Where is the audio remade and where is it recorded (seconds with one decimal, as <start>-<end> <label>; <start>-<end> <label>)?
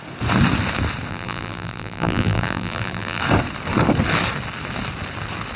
0.0-1.1 recorded; 1.1-3.2 remade; 3.2-5.6 recorded